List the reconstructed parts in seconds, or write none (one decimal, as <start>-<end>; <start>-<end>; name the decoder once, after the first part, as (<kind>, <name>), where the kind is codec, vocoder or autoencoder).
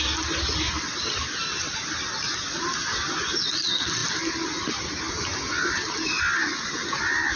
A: none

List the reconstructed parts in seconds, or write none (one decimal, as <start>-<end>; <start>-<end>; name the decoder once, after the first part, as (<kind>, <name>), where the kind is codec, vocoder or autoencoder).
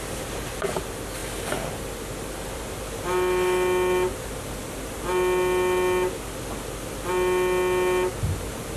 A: none